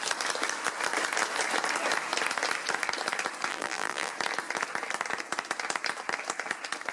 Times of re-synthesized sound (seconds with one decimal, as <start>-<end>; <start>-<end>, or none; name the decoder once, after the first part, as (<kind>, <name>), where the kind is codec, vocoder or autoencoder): 3.5-4.1 (vocoder, BigVGAN v2)